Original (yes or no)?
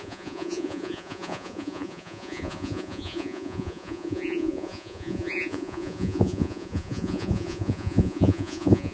no